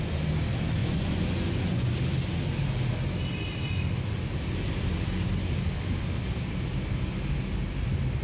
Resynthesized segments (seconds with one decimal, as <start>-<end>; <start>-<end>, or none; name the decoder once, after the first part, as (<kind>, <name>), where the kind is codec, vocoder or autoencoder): 0.8-1.9 (vocoder, Vocos)